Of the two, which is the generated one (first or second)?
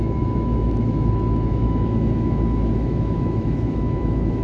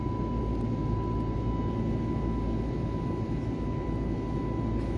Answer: first